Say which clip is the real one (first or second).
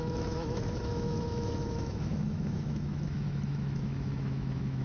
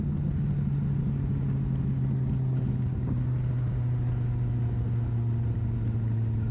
second